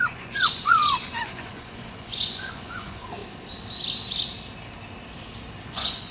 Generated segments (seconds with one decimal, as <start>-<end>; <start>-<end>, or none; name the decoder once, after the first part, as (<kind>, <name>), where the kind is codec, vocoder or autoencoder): 0.0-3.2 (vocoder, Vocos); 5.6-6.1